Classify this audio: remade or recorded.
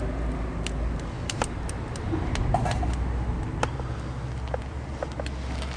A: recorded